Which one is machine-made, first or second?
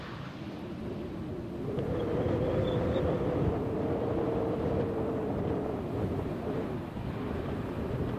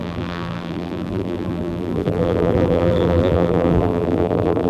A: second